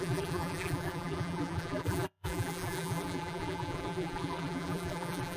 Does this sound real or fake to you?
fake